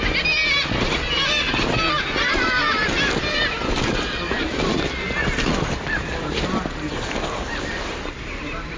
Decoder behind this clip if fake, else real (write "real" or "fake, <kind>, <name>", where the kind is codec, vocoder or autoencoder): real